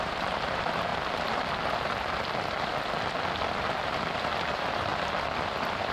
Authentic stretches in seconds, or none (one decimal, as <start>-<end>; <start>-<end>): 0.9-4.4; 4.9-5.9

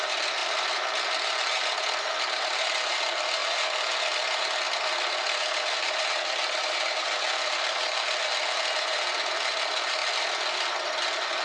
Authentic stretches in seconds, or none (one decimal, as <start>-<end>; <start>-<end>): 0.0-11.4

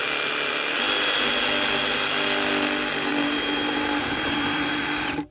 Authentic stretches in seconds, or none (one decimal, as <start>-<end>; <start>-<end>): 0.0-3.1; 4.4-5.3

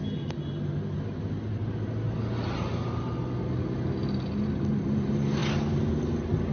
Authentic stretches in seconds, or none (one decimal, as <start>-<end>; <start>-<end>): 0.0-6.5

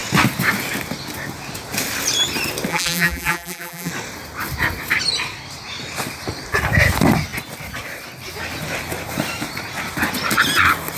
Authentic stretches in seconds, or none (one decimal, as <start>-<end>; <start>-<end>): 0.0-2.7; 3.9-11.0

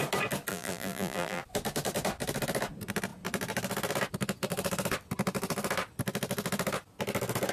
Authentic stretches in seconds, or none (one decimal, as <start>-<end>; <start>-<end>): 0.0-0.5; 1.4-7.5

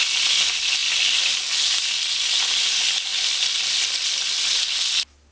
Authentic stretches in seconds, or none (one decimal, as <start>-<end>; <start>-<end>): 0.0-5.3